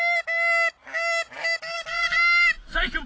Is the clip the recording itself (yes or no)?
yes